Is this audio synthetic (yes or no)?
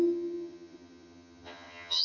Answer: yes